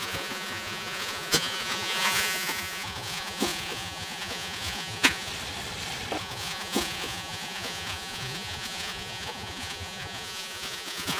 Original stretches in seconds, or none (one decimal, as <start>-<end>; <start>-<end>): 5.3-6.2